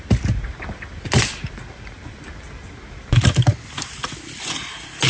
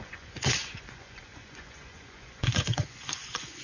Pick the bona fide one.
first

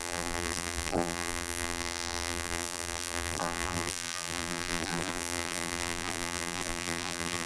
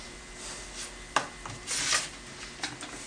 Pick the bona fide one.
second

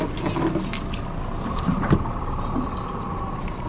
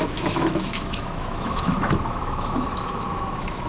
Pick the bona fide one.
first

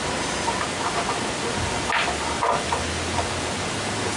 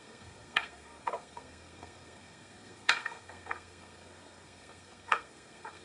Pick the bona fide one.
first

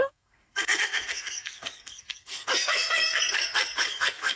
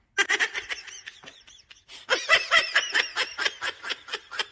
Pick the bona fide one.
second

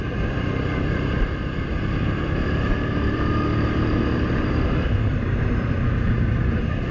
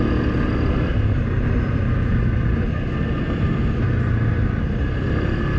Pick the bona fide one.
second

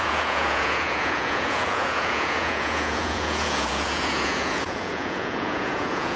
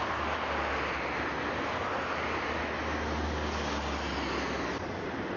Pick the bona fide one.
second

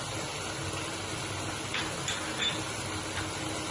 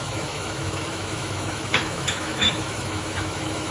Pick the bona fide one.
first